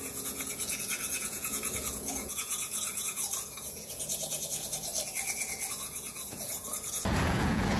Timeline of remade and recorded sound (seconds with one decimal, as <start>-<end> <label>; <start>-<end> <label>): 0.0-4.9 remade; 4.9-5.7 recorded; 5.7-7.8 remade